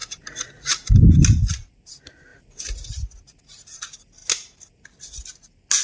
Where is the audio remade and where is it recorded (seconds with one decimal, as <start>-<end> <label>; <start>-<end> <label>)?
0.0-5.8 recorded